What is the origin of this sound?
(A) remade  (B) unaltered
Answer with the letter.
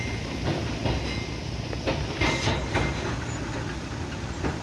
B